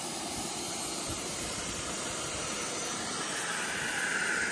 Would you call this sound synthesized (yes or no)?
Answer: yes